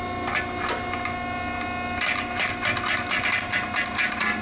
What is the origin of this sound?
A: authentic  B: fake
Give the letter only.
A